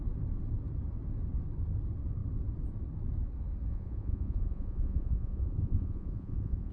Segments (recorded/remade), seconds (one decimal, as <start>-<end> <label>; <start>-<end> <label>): 0.0-3.7 recorded; 3.7-6.7 remade